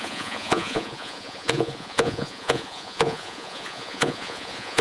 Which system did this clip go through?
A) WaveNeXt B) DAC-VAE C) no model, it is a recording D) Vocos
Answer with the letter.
D